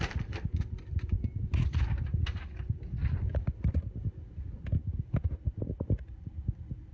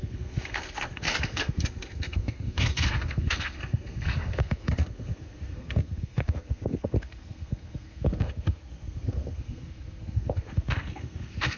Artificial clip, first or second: second